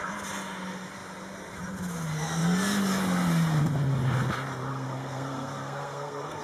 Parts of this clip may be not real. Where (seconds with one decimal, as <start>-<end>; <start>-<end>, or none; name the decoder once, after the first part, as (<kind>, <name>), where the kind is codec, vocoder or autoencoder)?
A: 4.7-6.4 (codec, SNAC)